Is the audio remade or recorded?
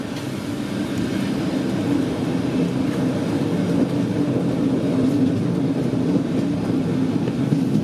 recorded